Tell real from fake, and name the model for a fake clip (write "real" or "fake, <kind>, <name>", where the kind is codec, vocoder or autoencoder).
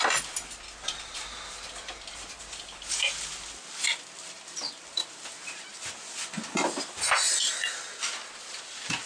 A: real